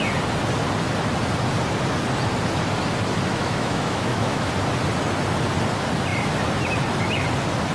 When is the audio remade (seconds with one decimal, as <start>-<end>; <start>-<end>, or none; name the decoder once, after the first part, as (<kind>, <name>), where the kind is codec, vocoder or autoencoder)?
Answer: 3.3-4.5 (autoencoder, DAC-VAE)